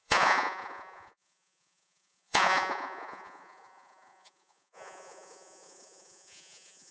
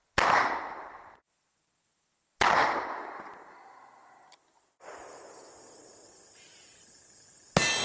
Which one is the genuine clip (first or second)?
second